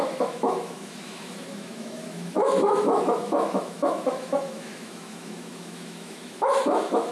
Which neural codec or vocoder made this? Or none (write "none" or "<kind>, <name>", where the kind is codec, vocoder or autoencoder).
autoencoder, DAC-VAE